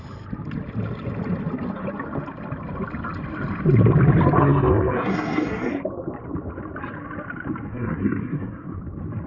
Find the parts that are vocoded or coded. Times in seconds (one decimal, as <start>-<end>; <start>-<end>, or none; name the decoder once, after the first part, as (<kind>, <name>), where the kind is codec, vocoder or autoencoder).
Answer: 4.4-5.7 (codec, SNAC); 7.7-8.8

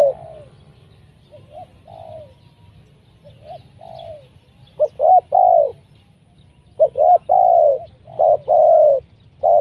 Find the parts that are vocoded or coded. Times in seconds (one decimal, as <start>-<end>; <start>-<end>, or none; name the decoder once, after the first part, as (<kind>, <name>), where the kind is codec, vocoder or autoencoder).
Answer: none

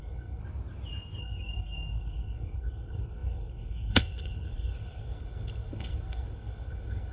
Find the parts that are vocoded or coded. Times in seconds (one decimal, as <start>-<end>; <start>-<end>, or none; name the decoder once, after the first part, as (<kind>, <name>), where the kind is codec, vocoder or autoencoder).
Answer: 0.0-0.4 (codec, SNAC); 1.2-7.1

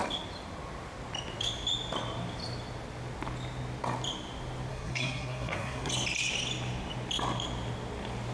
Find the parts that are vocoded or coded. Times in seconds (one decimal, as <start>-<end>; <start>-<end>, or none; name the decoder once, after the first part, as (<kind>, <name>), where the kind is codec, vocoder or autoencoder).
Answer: 4.7-5.9 (codec, SNAC)